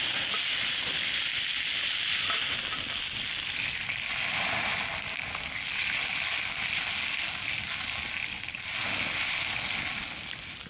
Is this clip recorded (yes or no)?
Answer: yes